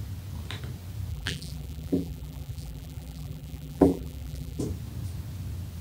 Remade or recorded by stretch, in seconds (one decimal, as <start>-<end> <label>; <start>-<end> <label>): 0.0-1.1 recorded; 1.1-4.6 remade; 4.6-5.8 recorded